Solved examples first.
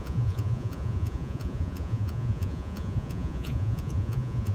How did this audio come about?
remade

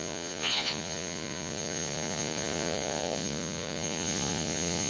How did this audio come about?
remade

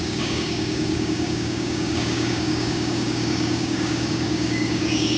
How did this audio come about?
remade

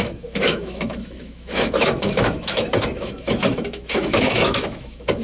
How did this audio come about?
remade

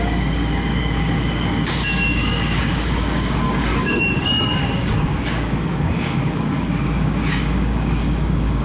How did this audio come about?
remade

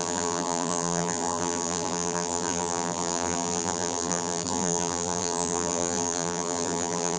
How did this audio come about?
remade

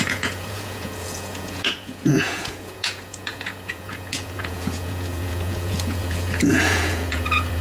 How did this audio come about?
remade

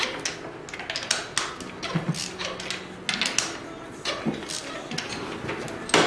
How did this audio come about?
recorded